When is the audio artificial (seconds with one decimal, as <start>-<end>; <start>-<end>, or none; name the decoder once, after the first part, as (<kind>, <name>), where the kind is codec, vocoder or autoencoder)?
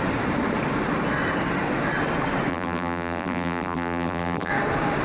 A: 2.5-4.5 (vocoder, BigVGAN v2)